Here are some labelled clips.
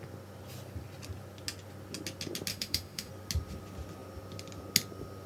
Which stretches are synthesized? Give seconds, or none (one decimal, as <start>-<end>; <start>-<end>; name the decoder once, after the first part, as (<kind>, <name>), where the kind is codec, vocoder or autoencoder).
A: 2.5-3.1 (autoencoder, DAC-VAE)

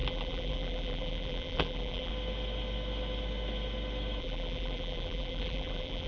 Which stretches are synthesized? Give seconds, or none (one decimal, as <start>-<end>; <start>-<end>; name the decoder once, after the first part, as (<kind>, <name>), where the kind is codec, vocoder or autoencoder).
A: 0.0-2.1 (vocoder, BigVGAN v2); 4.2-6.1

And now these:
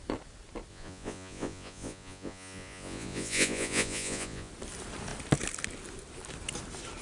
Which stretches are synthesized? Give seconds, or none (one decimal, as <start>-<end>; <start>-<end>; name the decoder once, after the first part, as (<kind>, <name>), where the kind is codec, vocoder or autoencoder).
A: 0.7-4.5 (vocoder, Vocos)

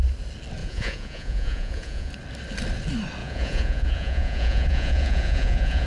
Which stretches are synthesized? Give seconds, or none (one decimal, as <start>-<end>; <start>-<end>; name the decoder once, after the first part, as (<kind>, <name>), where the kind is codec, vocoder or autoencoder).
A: 0.6-2.1 (vocoder, Vocos); 3.2-5.9

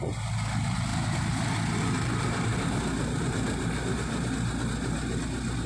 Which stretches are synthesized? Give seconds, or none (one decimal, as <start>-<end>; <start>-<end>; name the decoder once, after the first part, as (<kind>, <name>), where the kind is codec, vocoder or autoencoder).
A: 0.9-4.3 (vocoder, BigVGAN v2)

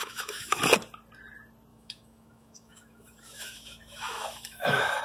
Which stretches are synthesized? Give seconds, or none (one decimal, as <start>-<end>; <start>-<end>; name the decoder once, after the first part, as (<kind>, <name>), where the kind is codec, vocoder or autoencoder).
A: 0.0-0.6 (autoencoder, DAC-VAE); 1.7-5.0